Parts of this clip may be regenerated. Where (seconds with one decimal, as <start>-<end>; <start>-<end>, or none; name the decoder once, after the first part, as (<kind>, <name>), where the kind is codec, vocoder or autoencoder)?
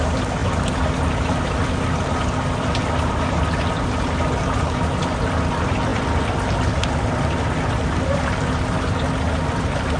none